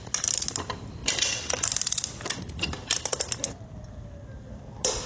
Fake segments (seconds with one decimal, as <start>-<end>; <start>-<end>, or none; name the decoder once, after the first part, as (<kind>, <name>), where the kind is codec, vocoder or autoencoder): none